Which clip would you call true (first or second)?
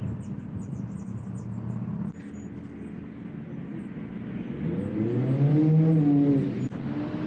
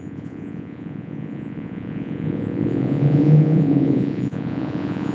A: first